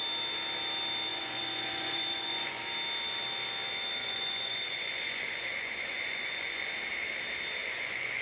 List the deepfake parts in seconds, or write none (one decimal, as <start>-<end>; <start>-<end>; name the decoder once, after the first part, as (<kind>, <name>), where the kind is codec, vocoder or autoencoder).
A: 1.1-2.6 (vocoder, Vocos); 4.0-6.7; 7.6-8.2

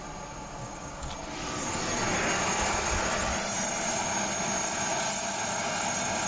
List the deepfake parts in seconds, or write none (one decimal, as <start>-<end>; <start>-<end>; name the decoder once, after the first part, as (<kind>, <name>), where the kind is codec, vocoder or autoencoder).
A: 0.6-1.1 (codec, DAC)

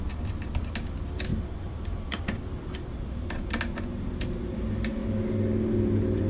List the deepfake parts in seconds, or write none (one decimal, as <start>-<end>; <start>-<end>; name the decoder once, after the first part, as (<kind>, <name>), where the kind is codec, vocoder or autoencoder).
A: 1.3-3.5 (vocoder, BigVGAN v2)

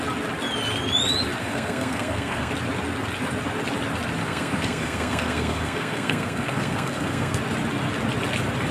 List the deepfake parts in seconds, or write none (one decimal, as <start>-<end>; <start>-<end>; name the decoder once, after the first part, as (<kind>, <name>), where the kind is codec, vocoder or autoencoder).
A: 1.4-2.5 (codec, SNAC); 4.2-7.4